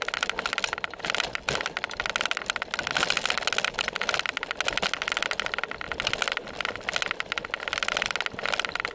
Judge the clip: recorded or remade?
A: recorded